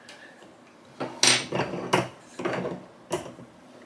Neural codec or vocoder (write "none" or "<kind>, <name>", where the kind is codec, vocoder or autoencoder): none